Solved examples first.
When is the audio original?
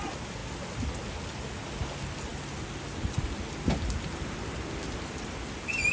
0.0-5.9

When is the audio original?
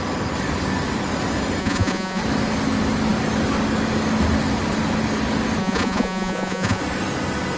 0.0-1.6; 2.2-5.6; 6.8-7.6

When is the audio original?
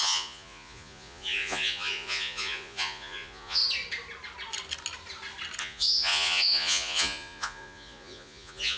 3.6-5.6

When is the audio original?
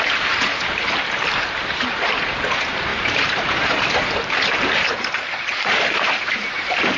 none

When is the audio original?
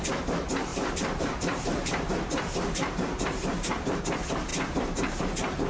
0.0-0.7; 4.0-4.5; 5.2-5.7